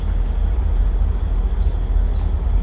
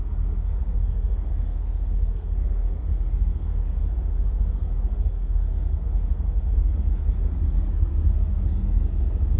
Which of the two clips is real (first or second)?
first